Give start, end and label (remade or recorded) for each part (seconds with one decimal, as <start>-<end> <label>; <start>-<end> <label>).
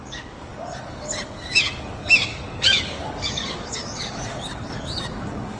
0.0-5.6 remade